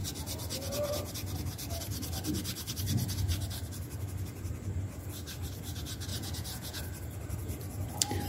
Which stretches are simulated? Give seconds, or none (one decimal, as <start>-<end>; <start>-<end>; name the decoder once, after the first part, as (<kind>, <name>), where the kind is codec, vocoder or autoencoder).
6.1-6.8 (vocoder, Vocos)